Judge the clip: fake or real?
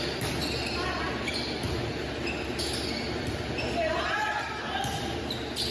real